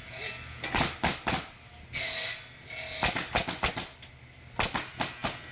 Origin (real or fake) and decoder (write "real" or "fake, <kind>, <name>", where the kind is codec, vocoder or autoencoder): real